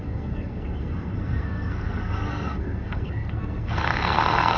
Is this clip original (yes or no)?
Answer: no